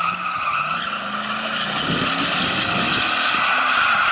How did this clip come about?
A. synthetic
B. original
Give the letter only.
B